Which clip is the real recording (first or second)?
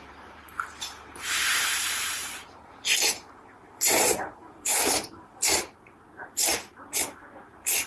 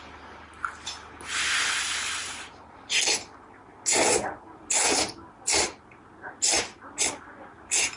second